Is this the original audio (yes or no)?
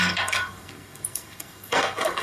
no